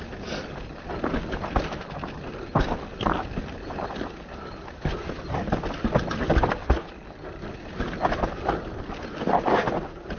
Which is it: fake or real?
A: real